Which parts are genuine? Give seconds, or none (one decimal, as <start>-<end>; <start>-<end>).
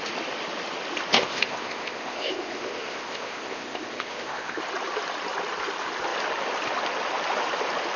0.0-1.1; 4.6-8.0